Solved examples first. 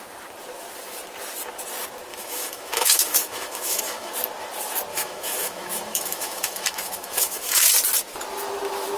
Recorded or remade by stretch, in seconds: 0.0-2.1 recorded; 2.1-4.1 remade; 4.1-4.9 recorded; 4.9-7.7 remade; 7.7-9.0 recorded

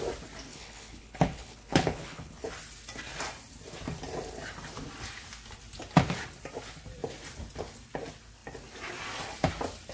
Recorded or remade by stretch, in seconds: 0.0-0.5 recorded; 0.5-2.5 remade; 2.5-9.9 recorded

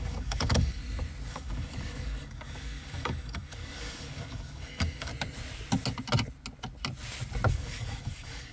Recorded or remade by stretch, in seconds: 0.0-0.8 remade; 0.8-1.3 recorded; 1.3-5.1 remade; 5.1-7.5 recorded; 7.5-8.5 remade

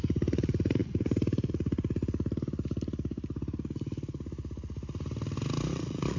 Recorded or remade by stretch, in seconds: 0.0-2.0 remade; 2.0-5.7 recorded; 5.7-6.2 remade